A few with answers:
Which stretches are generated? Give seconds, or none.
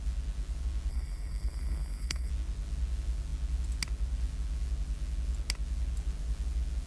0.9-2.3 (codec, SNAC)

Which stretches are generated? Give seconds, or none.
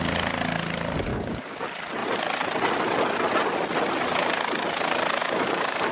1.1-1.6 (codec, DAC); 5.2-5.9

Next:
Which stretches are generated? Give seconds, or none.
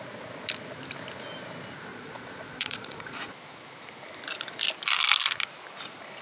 1.9-3.3 (vocoder, Vocos)